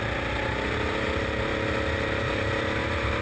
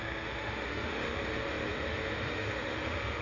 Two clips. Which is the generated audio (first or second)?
second